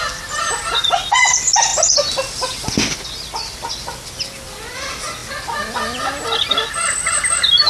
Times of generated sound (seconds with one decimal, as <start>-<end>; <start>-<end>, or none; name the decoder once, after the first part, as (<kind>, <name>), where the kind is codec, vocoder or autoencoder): none